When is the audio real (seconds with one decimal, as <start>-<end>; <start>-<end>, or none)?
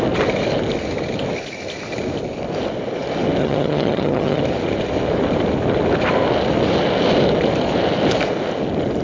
0.0-3.4; 4.4-9.0